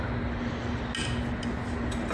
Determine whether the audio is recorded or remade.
recorded